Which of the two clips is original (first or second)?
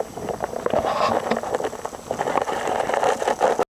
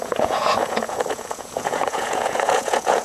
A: first